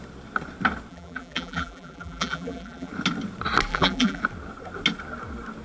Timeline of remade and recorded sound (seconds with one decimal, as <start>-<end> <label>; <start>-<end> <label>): 0.0-0.9 recorded; 0.9-2.9 remade; 2.9-3.7 recorded; 3.7-4.2 remade; 4.2-5.6 recorded